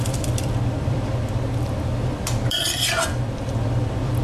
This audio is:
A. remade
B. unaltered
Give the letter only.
A